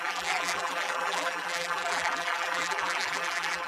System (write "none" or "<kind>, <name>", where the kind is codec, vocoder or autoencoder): vocoder, BigVGAN v2